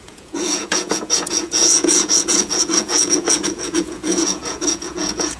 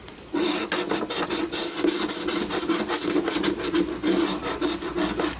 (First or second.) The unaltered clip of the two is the second